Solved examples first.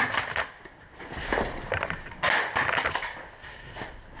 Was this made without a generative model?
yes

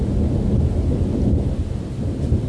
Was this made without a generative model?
yes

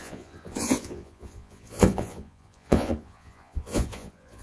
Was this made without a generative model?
no